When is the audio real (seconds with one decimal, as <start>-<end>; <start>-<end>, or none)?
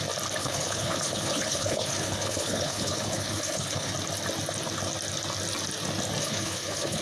0.0-0.4; 3.9-6.2